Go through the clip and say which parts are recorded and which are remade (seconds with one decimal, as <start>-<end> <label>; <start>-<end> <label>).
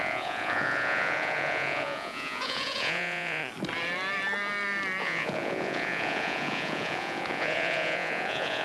0.0-3.4 remade; 3.4-5.0 recorded; 5.0-8.6 remade